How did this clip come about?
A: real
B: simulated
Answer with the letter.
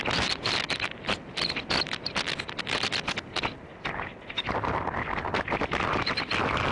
A